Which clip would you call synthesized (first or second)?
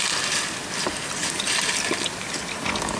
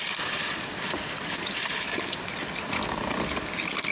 second